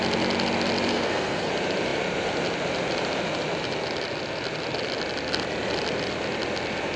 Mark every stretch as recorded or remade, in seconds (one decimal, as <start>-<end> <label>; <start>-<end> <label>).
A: 0.0-0.9 recorded; 0.9-1.5 remade; 1.5-7.0 recorded